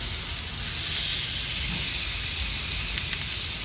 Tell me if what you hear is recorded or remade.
recorded